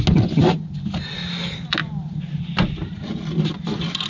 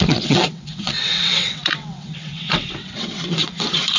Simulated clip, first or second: second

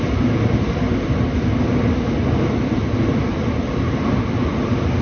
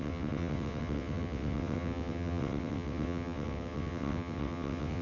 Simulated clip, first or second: second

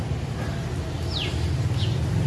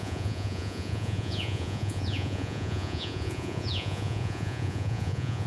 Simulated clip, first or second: second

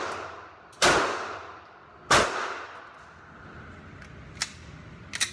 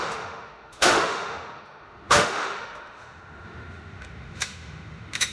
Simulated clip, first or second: second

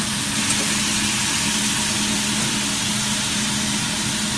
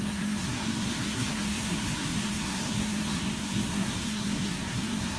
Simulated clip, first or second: second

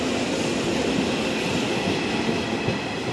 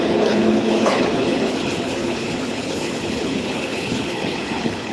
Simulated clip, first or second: second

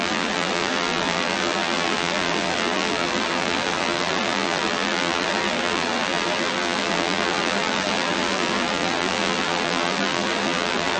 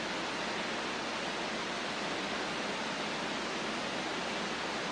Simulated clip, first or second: first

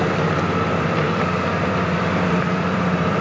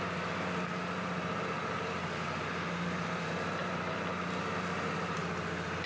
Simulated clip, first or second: first